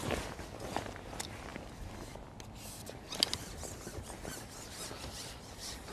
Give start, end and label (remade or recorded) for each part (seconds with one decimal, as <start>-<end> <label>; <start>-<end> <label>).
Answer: 0.0-5.9 recorded